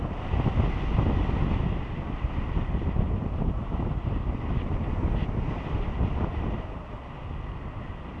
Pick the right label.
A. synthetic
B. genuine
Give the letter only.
B